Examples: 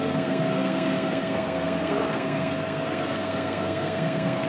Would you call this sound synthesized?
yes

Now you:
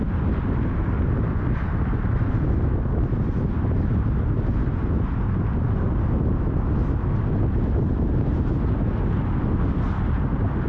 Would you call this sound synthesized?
no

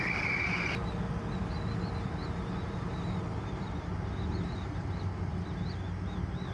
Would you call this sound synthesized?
no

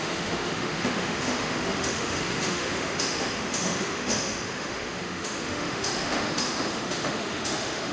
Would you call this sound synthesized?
yes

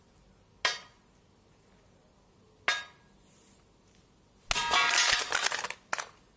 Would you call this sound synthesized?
no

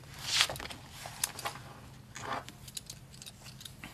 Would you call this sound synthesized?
no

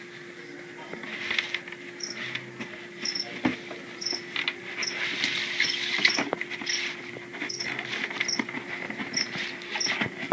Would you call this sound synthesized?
no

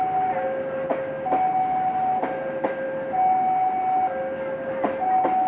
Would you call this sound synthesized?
no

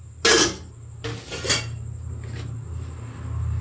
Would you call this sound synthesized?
no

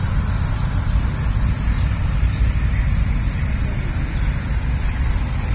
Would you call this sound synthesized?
yes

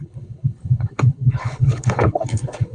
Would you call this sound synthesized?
yes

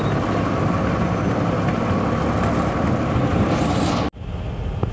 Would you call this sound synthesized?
no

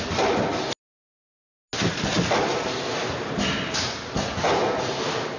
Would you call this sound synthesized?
no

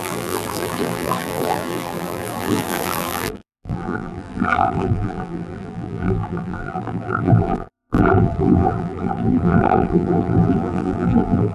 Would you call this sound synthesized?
yes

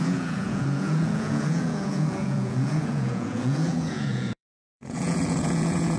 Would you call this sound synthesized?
yes